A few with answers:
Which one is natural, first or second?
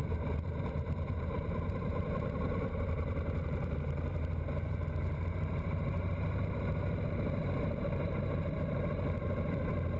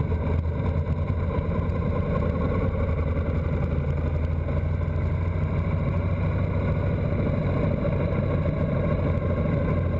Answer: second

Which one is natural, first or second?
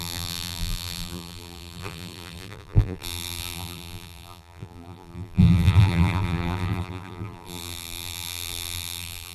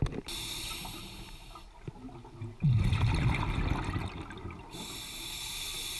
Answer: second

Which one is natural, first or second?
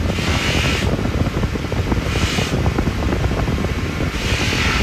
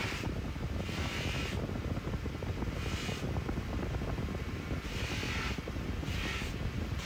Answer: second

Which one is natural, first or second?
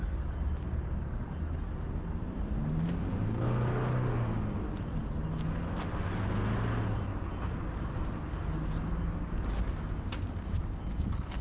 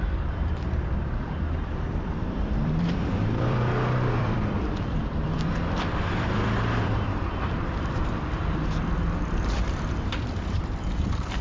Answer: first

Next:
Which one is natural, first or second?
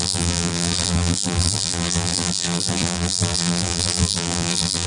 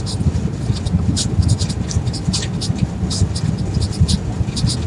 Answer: second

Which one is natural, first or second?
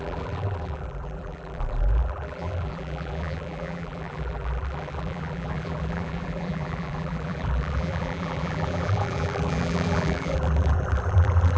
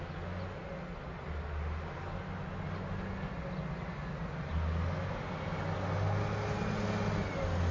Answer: second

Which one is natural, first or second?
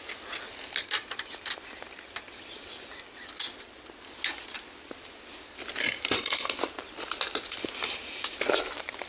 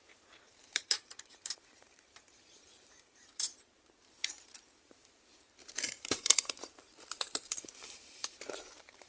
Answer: first